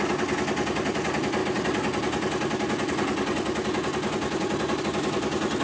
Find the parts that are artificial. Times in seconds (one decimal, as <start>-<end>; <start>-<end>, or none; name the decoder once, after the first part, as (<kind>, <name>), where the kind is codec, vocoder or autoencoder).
none